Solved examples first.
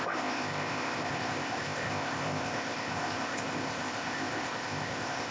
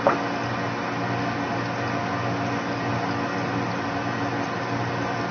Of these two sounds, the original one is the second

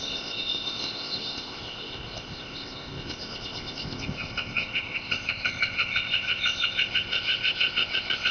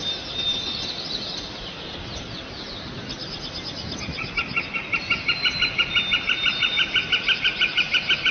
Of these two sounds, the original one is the second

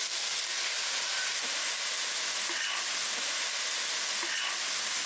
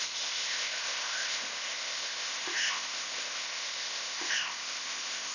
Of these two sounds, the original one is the first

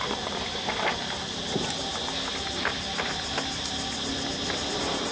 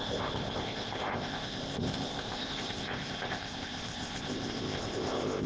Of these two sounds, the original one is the first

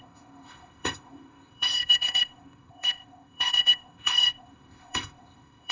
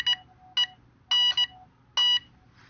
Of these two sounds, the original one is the second